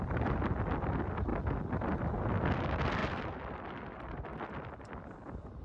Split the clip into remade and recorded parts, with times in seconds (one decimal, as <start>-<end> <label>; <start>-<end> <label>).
0.0-5.6 recorded